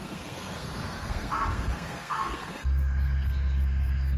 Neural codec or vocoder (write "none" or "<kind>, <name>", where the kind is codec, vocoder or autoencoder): codec, SNAC